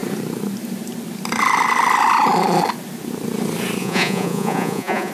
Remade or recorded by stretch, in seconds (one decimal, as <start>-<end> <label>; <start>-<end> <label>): 0.0-3.8 recorded; 3.8-5.1 remade